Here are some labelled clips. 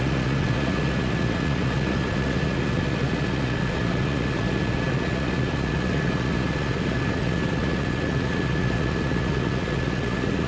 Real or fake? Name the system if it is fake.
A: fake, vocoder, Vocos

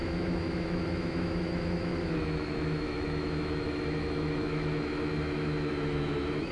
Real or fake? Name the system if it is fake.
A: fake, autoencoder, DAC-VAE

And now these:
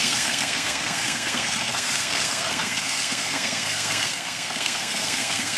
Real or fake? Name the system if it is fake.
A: fake, codec, SNAC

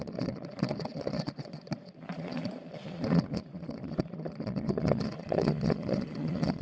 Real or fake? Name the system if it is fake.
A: fake, vocoder, Vocos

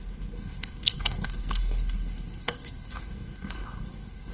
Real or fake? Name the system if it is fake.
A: fake, codec, SNAC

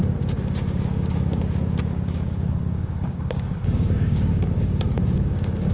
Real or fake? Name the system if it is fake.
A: fake, codec, DAC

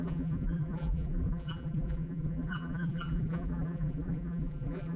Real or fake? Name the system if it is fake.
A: fake, vocoder, BigVGAN v2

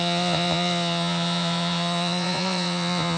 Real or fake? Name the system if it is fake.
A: fake, vocoder, Vocos